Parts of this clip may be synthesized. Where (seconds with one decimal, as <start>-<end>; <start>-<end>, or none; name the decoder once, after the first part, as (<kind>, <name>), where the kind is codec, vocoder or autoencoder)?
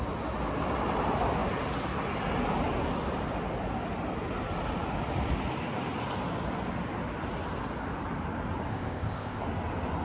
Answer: 8.7-9.4 (codec, ZipCodec)